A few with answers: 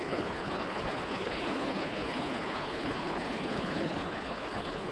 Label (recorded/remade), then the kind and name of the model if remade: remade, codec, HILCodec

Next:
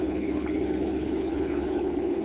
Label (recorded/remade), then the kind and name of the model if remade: remade, codec, HILCodec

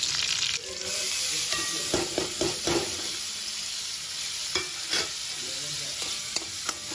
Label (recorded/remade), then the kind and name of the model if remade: recorded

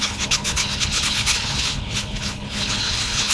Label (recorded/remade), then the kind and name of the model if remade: remade, codec, HILCodec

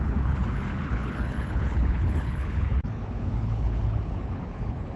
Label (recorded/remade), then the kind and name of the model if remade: remade, codec, HILCodec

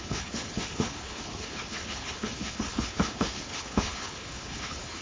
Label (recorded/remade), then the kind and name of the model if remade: remade, codec, HILCodec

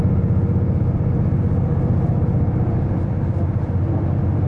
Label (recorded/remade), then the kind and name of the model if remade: recorded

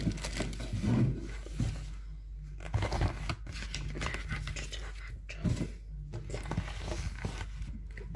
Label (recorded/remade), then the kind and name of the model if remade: recorded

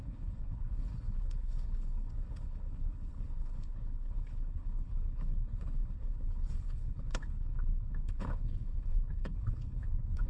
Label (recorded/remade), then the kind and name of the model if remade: remade, codec, HILCodec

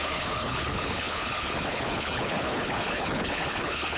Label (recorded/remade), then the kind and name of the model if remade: remade, codec, HILCodec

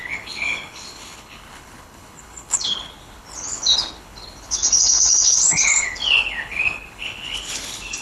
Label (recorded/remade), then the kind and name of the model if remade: remade, codec, HILCodec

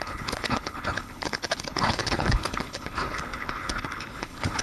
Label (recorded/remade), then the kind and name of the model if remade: remade, codec, HILCodec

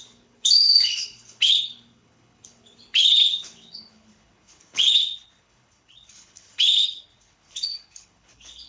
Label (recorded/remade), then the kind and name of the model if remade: remade, codec, HILCodec